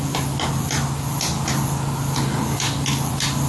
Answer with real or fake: real